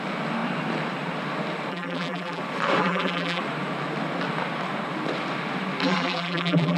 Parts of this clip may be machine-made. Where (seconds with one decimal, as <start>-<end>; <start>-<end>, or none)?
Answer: 1.7-2.4; 2.8-3.4; 5.8-6.8